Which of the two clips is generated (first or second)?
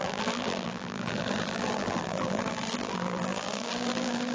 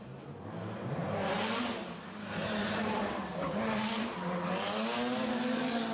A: first